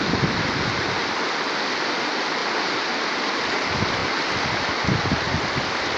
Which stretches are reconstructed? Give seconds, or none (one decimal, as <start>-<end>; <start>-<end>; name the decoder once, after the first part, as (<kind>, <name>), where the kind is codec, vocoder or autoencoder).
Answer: none